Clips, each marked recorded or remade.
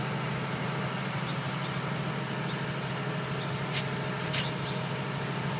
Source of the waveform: recorded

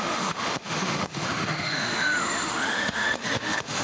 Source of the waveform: remade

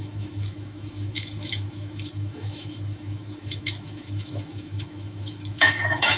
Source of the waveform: remade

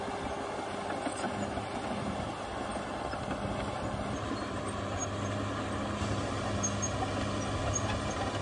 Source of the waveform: recorded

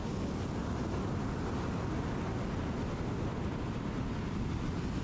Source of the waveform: recorded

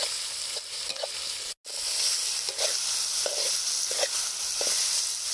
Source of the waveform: recorded